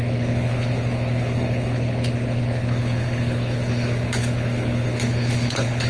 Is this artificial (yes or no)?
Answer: yes